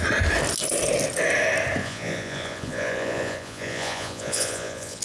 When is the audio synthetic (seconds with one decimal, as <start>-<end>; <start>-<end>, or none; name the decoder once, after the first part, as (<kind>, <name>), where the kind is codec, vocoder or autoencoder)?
1.8-5.0 (vocoder, Vocos)

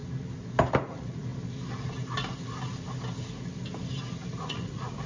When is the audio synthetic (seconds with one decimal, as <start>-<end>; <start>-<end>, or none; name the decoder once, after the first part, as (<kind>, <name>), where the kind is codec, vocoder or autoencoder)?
0.9-1.3 (vocoder, Vocos); 4.4-5.1

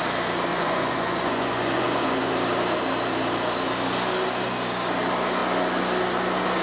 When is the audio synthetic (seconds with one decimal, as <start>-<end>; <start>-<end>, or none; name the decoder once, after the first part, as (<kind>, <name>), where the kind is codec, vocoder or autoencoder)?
0.5-2.3 (vocoder, Vocos)

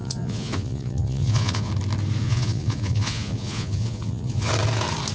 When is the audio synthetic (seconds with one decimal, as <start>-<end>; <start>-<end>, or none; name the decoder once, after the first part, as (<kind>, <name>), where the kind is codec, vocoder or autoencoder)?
0.0-1.7 (vocoder, Vocos); 2.2-4.5